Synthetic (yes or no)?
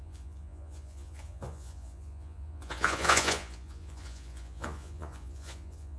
yes